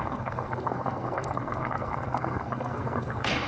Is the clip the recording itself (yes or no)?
no